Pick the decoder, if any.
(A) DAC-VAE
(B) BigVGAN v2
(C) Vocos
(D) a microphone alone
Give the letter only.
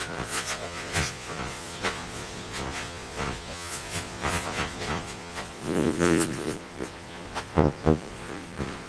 C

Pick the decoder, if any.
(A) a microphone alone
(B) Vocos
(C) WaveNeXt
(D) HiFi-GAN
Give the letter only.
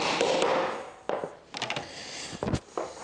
A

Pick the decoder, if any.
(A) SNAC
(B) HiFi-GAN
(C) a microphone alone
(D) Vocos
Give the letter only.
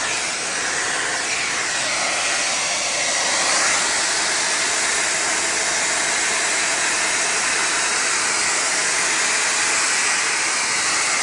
C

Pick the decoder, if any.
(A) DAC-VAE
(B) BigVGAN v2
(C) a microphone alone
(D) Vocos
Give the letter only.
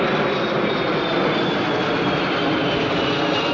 C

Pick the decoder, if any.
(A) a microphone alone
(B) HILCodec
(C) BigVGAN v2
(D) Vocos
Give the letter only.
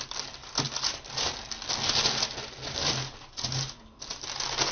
A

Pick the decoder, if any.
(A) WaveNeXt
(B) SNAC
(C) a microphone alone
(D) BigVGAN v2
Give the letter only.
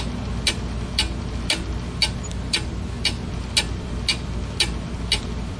C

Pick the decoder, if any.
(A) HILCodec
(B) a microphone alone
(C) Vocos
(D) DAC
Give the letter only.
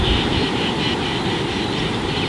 B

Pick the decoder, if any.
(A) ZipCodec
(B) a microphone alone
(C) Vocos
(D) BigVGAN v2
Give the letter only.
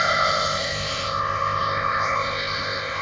A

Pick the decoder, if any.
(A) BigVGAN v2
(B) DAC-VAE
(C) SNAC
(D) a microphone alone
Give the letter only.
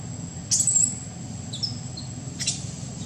D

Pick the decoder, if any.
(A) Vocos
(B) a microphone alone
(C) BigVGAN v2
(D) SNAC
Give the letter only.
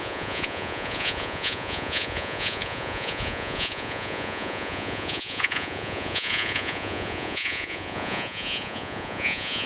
A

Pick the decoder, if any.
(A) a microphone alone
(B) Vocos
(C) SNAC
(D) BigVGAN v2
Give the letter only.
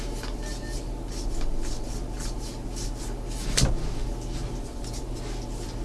A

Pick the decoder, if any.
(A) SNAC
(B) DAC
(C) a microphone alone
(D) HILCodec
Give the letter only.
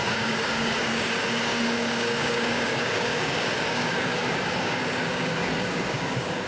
B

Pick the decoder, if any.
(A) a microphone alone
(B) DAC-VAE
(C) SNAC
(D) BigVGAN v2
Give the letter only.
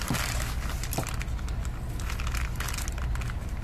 A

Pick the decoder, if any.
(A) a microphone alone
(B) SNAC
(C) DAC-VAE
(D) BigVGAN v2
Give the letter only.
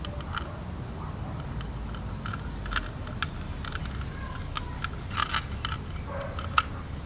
A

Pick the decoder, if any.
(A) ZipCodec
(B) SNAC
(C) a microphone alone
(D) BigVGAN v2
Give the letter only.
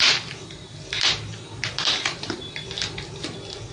C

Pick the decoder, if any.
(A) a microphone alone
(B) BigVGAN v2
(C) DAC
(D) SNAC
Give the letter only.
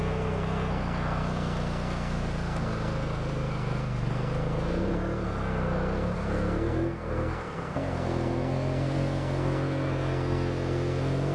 D